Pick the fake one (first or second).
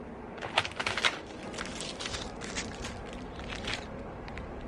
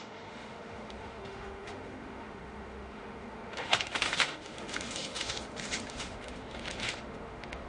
second